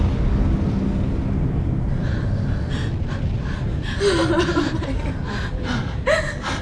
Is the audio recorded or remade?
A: recorded